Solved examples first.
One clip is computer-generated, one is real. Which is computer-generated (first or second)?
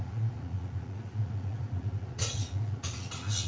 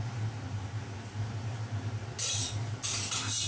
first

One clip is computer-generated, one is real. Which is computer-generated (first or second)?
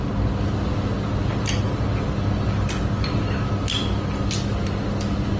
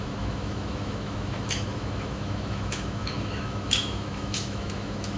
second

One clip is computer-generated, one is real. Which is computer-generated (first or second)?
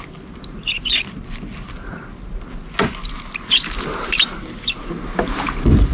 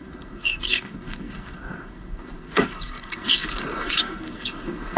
second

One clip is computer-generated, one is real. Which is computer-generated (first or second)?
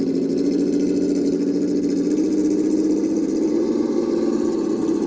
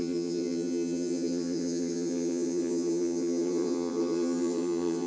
second